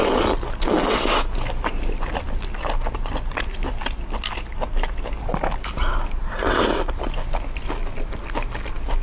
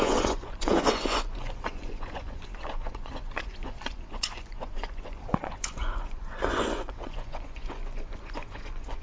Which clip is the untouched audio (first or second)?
first